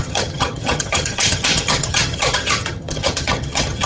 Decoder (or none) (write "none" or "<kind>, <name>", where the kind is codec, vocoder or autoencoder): vocoder, HiFi-GAN